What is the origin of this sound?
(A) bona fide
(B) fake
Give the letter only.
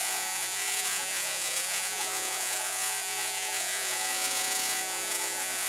B